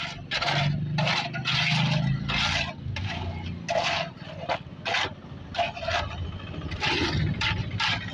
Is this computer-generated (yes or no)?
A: no